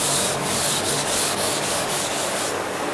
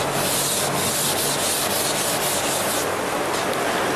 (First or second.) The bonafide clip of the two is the second